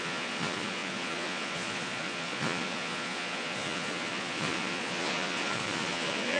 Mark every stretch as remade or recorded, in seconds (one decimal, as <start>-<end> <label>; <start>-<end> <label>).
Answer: 0.0-6.4 remade